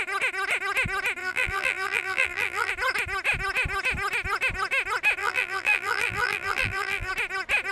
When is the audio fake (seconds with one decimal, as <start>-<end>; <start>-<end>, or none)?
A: 1.2-2.7; 5.2-7.1